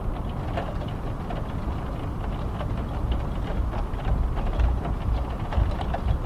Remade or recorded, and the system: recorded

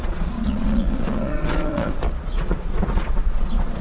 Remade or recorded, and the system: remade, vocoder, Vocos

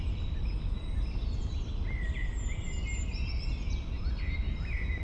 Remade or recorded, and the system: recorded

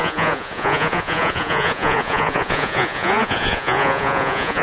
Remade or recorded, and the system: remade, vocoder, Vocos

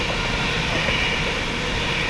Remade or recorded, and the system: recorded